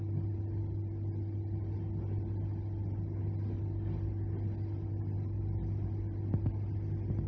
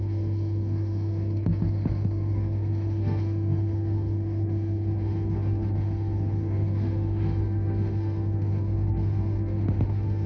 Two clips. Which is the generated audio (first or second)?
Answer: second